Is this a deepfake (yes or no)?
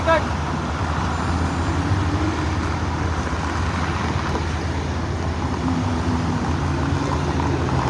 no